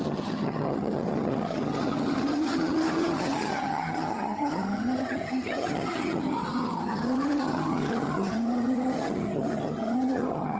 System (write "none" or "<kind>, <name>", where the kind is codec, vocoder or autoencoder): vocoder, HiFi-GAN